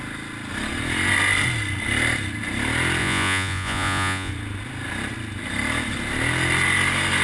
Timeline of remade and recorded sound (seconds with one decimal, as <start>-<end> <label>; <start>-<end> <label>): 0.0-3.0 recorded; 3.0-4.3 remade; 4.3-7.2 recorded